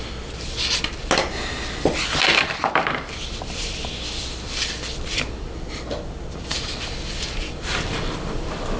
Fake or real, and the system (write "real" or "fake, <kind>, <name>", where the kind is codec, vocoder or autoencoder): fake, vocoder, BigVGAN v2